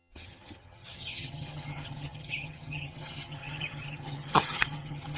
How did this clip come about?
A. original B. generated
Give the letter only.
B